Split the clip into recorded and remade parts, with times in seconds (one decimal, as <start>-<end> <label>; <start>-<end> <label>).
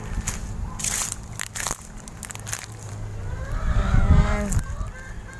0.0-3.2 recorded; 3.2-3.8 remade; 3.8-5.4 recorded